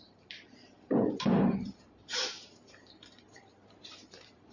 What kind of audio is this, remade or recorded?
remade